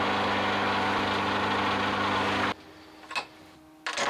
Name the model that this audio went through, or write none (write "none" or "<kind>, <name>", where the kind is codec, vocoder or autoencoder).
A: none